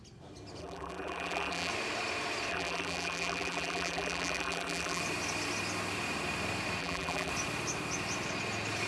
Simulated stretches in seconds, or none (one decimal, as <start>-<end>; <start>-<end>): 0.6-1.7; 2.5-5.0; 6.8-7.3